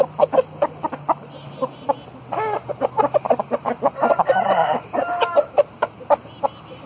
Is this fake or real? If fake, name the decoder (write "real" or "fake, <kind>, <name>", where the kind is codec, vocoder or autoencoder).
real